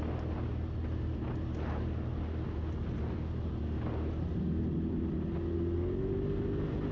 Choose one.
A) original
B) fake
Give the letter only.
A